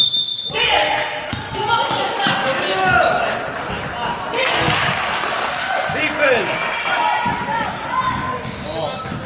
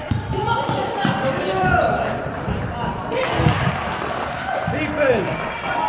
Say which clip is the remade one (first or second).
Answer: second